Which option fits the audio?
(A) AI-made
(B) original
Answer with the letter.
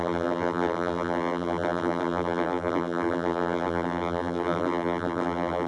A